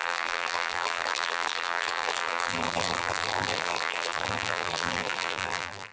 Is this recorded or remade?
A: remade